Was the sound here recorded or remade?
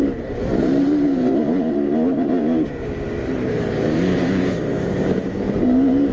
remade